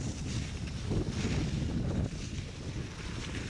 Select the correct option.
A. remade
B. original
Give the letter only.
B